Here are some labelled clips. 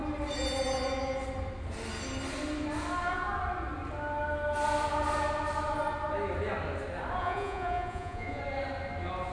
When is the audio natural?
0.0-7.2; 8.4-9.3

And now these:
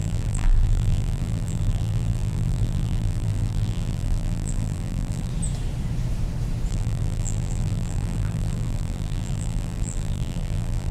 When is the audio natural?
5.3-6.7

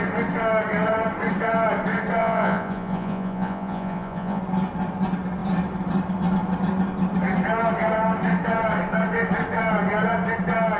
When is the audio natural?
0.0-2.2; 4.4-10.8

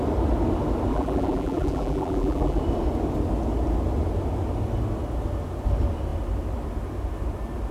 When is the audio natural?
0.0-0.9; 2.6-7.7

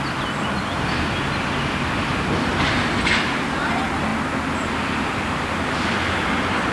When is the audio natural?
0.0-6.7

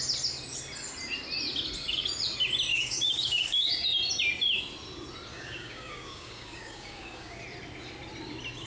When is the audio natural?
0.0-2.7; 3.7-5.3; 7.4-8.7